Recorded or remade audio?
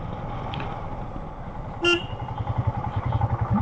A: recorded